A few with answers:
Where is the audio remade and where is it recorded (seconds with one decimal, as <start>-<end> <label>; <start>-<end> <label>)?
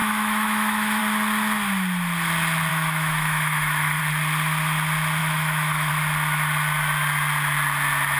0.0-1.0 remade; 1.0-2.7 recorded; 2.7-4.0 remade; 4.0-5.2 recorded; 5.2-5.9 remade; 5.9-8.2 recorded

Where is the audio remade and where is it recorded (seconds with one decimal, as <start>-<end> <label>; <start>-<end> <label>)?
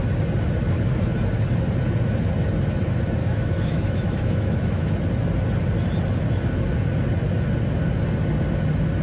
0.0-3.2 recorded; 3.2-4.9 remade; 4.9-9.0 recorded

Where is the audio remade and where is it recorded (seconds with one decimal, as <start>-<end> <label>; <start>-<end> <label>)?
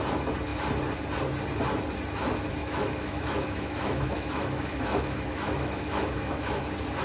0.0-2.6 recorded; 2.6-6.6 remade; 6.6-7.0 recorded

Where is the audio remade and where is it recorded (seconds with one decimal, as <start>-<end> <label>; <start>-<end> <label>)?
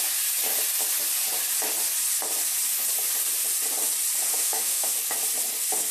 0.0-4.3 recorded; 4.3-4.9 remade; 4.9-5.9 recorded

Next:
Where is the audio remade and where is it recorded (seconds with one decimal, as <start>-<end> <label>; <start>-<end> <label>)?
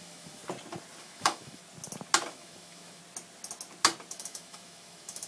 0.0-0.4 remade; 0.4-1.0 recorded; 1.0-1.6 remade; 1.6-2.3 recorded; 2.3-3.0 remade; 3.0-4.1 recorded; 4.1-5.3 remade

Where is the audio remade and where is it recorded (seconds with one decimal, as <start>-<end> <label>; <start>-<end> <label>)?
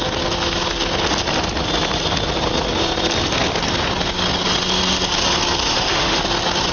0.0-5.6 recorded; 5.6-6.2 remade; 6.2-6.7 recorded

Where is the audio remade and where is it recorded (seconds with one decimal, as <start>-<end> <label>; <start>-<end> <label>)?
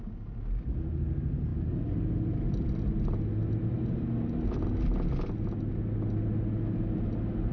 0.0-7.5 recorded